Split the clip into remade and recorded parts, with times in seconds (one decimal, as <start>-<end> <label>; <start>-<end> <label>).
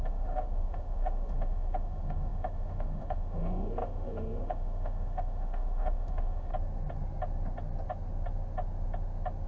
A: 0.0-6.5 remade; 6.5-9.5 recorded